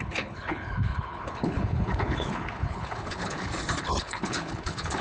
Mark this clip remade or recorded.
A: remade